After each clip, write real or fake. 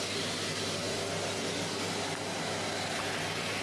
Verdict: real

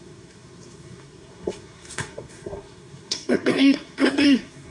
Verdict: fake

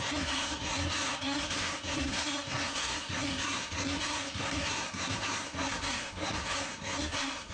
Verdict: fake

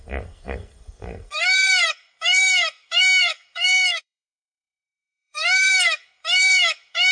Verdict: fake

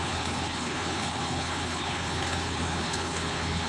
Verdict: fake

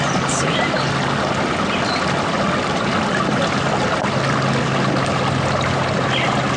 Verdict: real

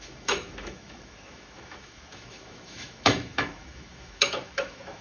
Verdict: fake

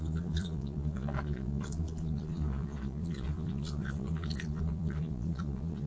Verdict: fake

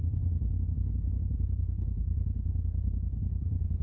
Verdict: fake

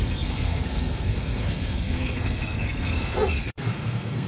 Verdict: fake